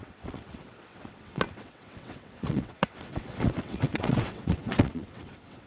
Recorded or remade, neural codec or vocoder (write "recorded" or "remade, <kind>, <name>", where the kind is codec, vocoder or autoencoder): remade, vocoder, WaveNeXt